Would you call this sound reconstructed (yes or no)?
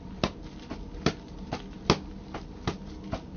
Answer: no